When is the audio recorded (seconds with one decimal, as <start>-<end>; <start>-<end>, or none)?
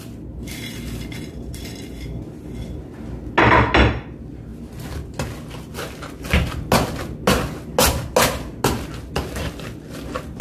0.0-10.4